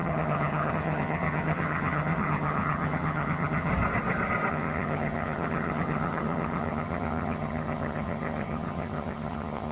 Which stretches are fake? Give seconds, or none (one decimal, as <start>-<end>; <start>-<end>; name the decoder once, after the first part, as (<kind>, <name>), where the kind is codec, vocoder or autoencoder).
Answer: 0.0-3.7 (vocoder, HiFi-GAN); 4.5-9.7